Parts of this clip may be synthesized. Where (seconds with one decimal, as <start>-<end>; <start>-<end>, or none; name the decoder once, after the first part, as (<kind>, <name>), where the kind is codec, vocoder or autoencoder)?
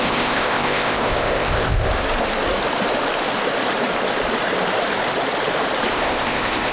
0.0-1.9 (codec, ZipCodec); 5.9-6.7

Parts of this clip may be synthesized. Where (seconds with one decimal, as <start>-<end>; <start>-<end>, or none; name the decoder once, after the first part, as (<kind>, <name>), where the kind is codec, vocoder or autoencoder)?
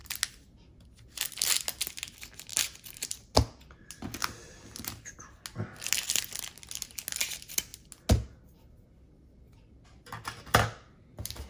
none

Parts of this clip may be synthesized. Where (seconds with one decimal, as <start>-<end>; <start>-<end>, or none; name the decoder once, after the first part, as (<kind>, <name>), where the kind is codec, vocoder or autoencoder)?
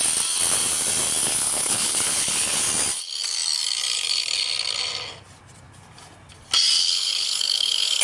1.2-2.7 (codec, HILCodec); 6.8-8.0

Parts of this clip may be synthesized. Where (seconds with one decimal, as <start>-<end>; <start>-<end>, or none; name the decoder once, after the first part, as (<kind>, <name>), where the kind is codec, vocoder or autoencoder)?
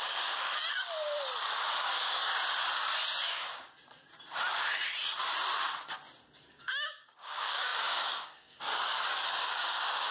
0.0-0.6 (codec, DAC); 1.8-2.3; 6.5-10.1